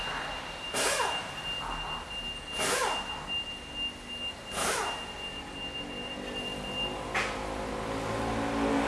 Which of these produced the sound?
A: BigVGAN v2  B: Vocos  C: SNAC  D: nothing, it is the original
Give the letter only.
D